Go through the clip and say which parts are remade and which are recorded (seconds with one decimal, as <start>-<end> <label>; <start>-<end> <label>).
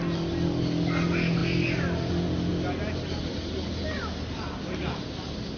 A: 0.0-5.6 recorded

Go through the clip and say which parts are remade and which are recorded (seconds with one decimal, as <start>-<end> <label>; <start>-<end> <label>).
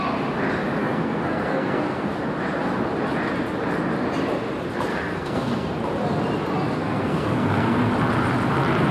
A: 0.0-0.8 recorded; 0.8-2.1 remade; 2.1-4.9 recorded; 4.9-5.7 remade; 5.7-6.8 recorded; 6.8-7.9 remade; 7.9-8.9 recorded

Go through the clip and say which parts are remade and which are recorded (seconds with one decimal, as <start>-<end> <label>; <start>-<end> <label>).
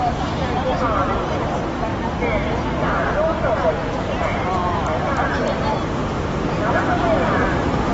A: 0.0-7.9 recorded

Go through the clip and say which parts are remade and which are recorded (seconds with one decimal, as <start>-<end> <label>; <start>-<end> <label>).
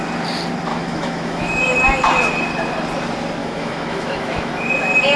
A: 0.0-0.7 recorded; 0.7-1.6 remade; 1.6-3.4 recorded; 3.4-4.5 remade; 4.5-5.2 recorded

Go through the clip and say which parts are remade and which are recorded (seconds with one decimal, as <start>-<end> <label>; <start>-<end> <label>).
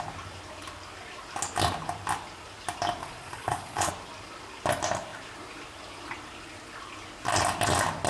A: 0.0-3.0 recorded; 3.0-3.9 remade; 3.9-8.1 recorded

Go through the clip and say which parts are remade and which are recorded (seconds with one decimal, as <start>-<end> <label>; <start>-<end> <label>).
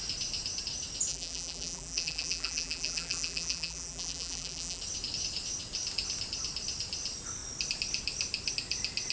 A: 0.0-1.1 recorded; 1.1-4.8 remade; 4.8-9.1 recorded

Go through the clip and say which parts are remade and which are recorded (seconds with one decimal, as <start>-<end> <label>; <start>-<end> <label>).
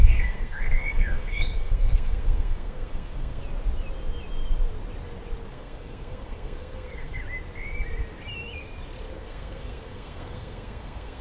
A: 0.0-3.4 remade; 3.4-5.5 recorded; 5.5-7.2 remade; 7.2-9.1 recorded; 9.1-11.2 remade